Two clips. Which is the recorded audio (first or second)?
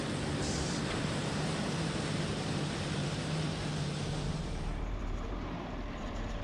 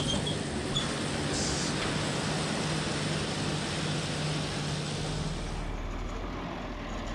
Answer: second